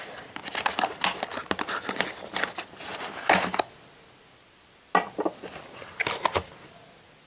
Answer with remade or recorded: recorded